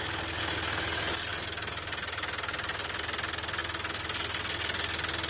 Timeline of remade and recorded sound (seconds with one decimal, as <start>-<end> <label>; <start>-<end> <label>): 0.0-5.3 recorded

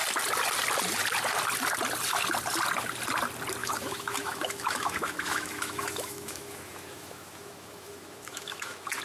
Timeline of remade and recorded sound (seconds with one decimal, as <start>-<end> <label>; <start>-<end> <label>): 0.0-3.6 recorded; 3.6-9.0 remade

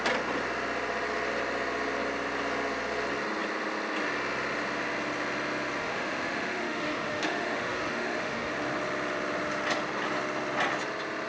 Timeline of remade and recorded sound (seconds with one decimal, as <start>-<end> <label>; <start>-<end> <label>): 0.0-5.8 recorded; 5.8-8.5 remade; 8.5-11.3 recorded

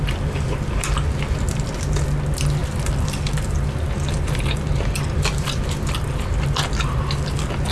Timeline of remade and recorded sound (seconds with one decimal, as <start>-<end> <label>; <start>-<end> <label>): 0.0-7.7 recorded